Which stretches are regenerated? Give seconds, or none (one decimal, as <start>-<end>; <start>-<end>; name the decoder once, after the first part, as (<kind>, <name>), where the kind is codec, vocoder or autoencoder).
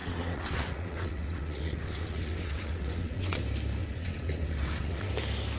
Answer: 0.0-3.4 (vocoder, WaveNeXt); 3.8-5.1